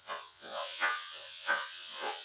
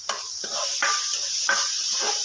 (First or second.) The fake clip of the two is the first